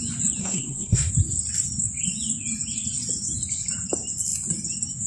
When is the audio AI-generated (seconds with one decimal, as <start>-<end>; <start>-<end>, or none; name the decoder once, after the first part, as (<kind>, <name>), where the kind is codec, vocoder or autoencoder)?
0.4-1.1 (codec, SNAC)